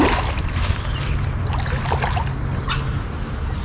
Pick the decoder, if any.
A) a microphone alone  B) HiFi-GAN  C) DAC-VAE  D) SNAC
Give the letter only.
A